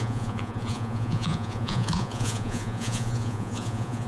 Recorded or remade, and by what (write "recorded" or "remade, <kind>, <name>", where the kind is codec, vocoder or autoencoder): remade, vocoder, Vocos